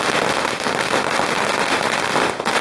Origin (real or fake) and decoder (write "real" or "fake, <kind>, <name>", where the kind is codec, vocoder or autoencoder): real